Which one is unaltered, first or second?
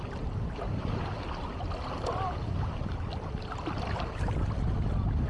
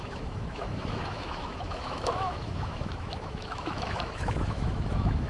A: first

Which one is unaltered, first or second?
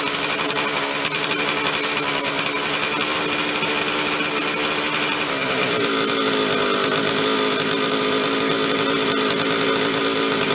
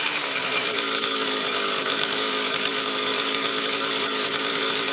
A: first